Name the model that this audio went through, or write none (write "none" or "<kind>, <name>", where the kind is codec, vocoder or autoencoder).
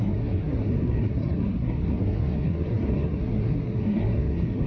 codec, SNAC